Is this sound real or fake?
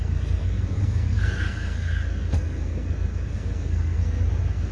fake